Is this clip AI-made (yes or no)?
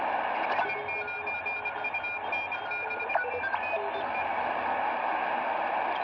no